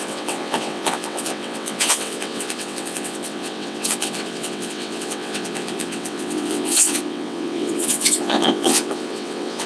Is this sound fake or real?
fake